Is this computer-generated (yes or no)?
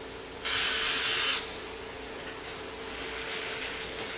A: no